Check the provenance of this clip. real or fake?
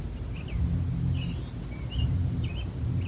real